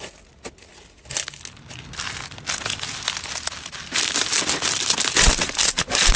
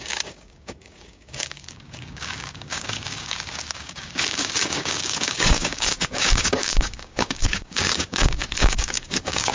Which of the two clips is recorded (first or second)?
first